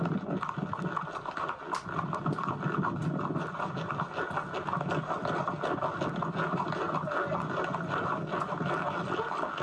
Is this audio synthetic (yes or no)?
no